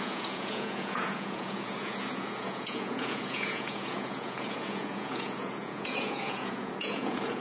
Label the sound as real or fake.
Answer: fake